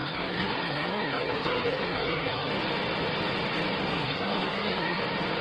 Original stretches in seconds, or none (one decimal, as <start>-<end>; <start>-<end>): 2.5-3.9; 5.0-5.4